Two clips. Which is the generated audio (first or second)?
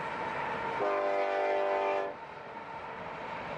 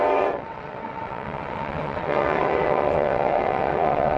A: second